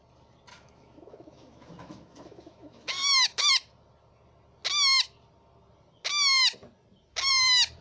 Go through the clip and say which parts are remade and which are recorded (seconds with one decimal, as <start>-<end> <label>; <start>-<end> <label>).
0.0-0.5 recorded; 0.5-3.5 remade; 3.5-7.8 recorded

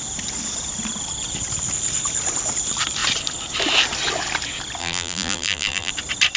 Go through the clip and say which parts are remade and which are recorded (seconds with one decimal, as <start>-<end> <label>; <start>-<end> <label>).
0.0-4.8 recorded; 4.8-5.9 remade; 5.9-6.4 recorded

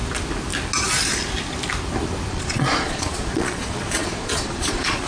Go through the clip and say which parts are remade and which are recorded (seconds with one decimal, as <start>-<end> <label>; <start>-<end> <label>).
0.0-2.3 recorded; 2.3-5.1 remade

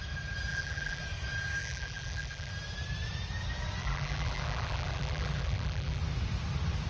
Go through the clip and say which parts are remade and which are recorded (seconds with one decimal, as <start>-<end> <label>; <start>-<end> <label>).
0.0-0.5 recorded; 0.5-1.0 remade; 1.0-1.6 recorded; 1.6-2.5 remade; 2.5-3.8 recorded; 3.8-6.0 remade; 6.0-6.9 recorded

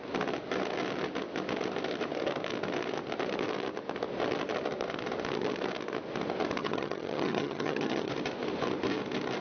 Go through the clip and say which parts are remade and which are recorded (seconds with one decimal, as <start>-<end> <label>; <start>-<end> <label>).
0.0-6.6 recorded; 6.6-8.1 remade; 8.1-9.4 recorded

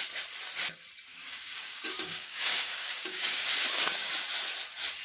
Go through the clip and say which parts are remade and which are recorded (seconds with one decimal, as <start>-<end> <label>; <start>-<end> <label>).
0.0-1.1 recorded; 1.1-4.1 remade; 4.1-5.0 recorded

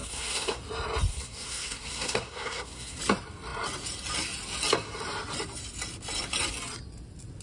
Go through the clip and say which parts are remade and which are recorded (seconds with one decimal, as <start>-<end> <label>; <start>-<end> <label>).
0.0-0.6 remade; 0.6-1.1 recorded; 1.1-3.0 remade; 3.0-7.4 recorded

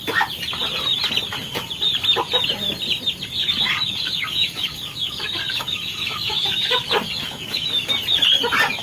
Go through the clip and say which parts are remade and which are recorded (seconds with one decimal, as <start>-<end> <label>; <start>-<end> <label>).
0.0-3.4 recorded; 3.4-7.9 remade; 7.9-8.8 recorded